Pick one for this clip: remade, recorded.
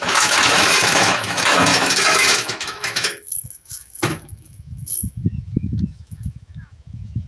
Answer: remade